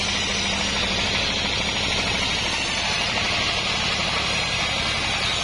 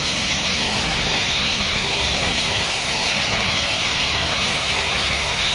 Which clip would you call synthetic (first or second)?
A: second